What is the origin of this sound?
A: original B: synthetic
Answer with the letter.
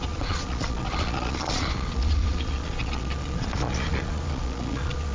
B